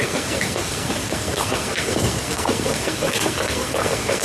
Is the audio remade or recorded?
remade